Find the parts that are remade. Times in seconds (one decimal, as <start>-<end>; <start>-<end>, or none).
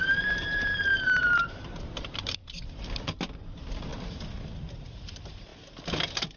0.0-2.4; 3.3-3.9; 4.6-5.5